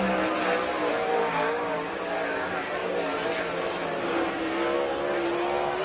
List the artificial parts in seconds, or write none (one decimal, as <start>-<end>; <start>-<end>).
1.2-2.1